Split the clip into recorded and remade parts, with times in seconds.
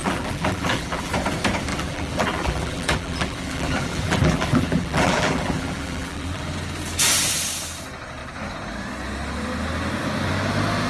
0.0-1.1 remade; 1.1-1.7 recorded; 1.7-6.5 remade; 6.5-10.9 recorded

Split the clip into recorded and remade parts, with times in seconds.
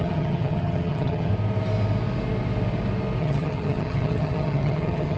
0.0-1.3 remade; 1.3-3.2 recorded; 3.2-5.2 remade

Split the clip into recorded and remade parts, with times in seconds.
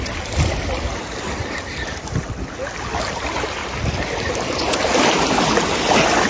0.0-6.3 recorded